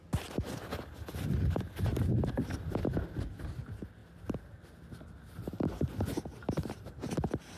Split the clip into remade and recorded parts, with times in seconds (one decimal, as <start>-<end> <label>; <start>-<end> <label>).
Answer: 0.0-1.9 recorded; 1.9-2.9 remade; 2.9-6.3 recorded; 6.3-7.1 remade; 7.1-7.6 recorded